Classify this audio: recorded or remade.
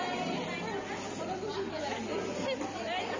recorded